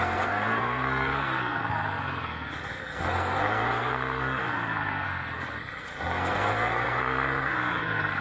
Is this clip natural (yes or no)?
no